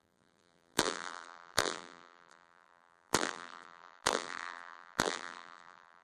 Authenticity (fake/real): fake